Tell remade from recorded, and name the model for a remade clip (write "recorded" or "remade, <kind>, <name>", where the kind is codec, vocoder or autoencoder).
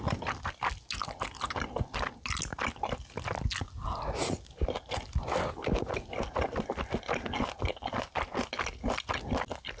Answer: recorded